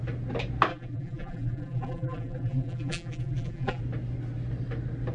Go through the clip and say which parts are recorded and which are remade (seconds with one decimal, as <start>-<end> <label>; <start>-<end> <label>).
0.0-0.7 recorded; 0.7-3.8 remade; 3.8-5.1 recorded